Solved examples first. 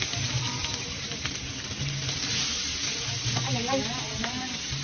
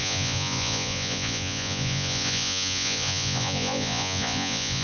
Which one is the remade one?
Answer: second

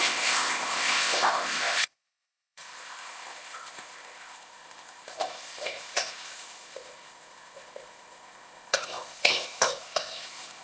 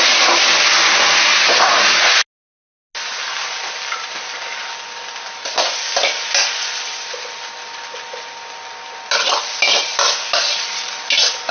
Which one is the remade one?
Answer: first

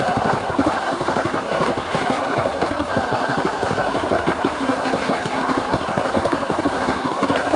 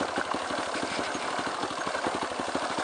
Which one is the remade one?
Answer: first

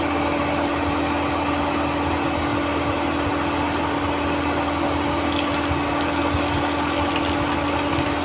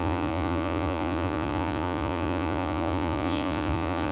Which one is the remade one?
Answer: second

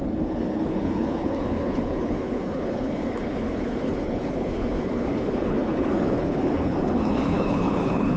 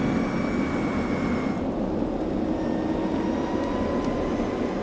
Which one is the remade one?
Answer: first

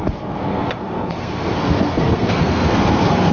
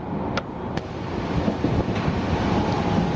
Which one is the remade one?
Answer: first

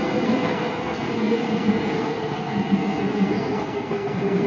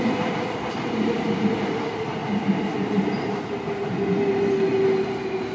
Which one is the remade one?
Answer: first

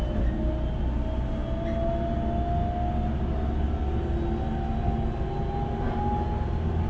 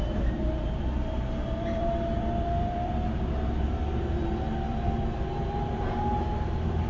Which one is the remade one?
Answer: second